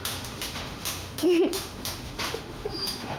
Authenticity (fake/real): fake